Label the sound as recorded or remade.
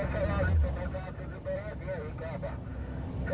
recorded